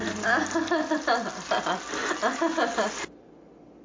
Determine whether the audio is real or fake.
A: real